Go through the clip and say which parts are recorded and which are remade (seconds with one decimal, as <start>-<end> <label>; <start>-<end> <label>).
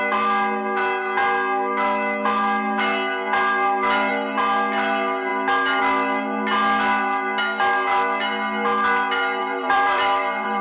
0.0-9.4 recorded; 9.4-10.6 remade